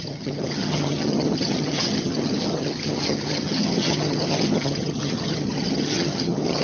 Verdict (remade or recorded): remade